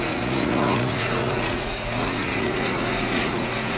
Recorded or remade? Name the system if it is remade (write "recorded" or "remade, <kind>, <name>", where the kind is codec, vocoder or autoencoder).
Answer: remade, vocoder, Vocos